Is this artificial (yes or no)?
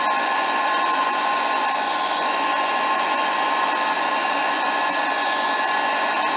yes